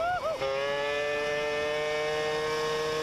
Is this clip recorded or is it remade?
recorded